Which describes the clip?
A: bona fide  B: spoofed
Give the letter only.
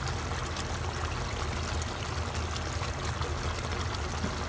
A